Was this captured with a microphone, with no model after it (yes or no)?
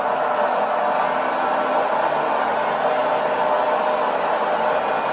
yes